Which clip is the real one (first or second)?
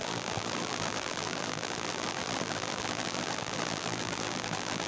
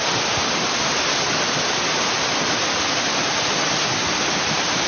second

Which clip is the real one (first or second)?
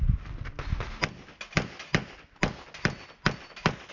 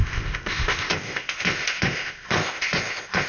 first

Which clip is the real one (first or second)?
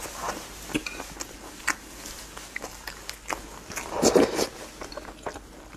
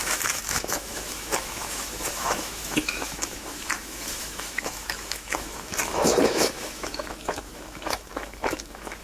first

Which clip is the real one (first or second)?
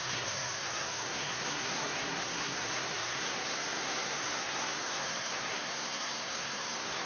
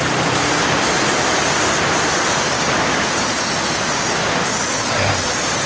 second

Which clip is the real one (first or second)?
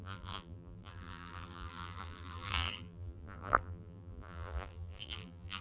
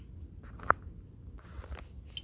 second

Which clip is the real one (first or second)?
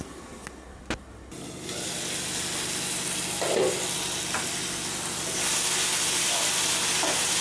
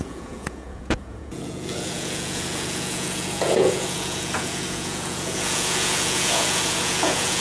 first